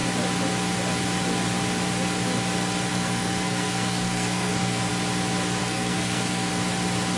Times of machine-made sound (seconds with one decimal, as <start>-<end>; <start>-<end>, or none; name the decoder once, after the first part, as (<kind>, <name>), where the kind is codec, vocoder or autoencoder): 2.9-4.9 (codec, SNAC); 5.6-6.5